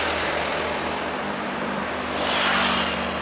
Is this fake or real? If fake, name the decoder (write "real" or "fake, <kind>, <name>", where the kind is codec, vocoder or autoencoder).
real